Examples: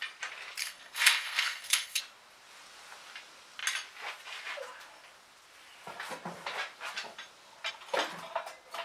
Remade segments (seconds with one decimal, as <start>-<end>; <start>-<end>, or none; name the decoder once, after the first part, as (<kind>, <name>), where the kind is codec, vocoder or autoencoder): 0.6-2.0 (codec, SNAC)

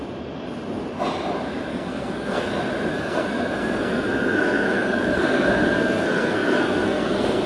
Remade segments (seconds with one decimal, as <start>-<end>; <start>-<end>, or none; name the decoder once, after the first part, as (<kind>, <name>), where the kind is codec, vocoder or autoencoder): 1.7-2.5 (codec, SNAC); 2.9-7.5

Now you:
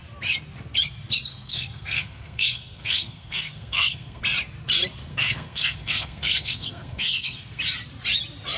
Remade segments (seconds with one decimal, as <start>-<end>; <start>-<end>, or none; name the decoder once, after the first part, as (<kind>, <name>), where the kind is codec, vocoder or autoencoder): 1.3-4.2 (codec, SNAC); 5.1-7.6

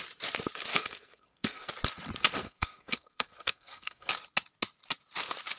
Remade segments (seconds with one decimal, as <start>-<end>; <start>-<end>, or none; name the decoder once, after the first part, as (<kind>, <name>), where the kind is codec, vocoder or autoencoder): 0.7-1.7 (codec, SNAC); 2.4-4.1

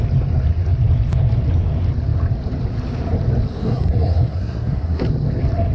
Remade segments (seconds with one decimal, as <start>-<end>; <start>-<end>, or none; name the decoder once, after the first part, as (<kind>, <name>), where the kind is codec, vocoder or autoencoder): 3.6-5.0 (codec, SNAC)

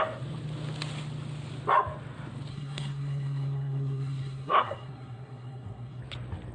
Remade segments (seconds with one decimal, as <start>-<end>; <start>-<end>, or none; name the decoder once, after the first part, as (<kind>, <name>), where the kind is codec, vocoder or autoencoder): 2.5-6.0 (codec, SNAC)